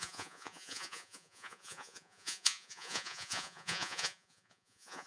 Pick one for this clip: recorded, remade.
remade